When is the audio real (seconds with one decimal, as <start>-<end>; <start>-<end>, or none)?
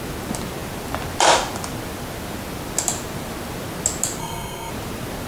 0.0-4.2; 4.7-5.3